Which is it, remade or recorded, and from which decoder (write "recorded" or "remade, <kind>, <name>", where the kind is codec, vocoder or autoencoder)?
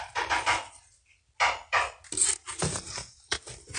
recorded